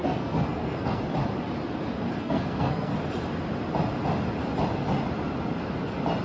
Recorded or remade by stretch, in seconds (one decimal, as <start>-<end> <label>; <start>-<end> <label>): 0.0-1.0 remade; 1.0-2.2 recorded; 2.2-2.9 remade; 2.9-6.2 recorded